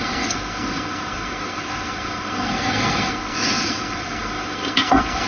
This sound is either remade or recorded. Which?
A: remade